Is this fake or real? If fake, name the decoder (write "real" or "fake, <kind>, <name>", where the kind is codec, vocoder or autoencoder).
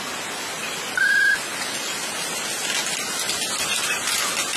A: real